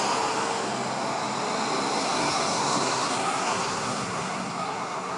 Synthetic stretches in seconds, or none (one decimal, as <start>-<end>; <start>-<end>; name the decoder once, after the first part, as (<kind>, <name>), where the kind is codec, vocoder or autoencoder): 2.0-5.2 (codec, SNAC)